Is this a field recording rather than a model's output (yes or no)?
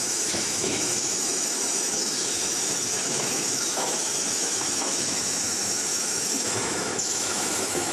no